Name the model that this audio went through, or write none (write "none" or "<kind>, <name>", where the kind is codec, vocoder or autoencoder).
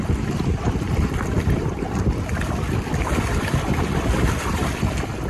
vocoder, BigVGAN v2